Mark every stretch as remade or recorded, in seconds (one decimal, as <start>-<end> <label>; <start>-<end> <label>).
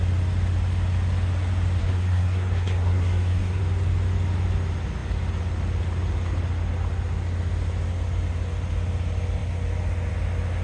0.0-1.8 recorded; 1.8-3.6 remade; 3.6-10.6 recorded